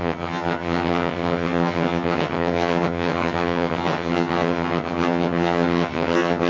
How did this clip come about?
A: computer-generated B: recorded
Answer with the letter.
A